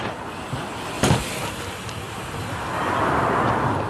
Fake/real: real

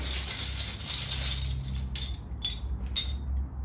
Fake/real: real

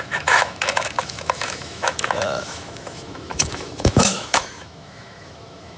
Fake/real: fake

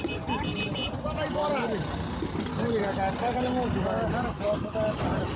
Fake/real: real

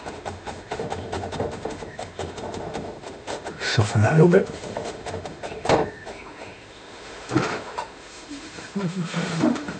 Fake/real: fake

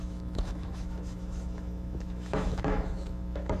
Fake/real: fake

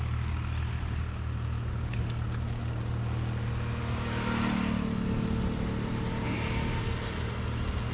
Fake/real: real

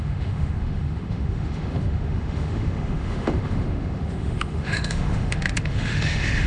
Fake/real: fake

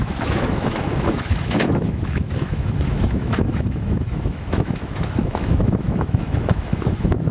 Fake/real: fake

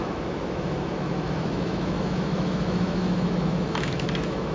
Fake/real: fake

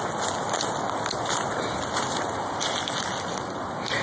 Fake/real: real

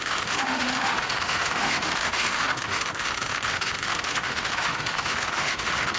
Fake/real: fake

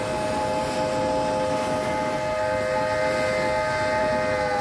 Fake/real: real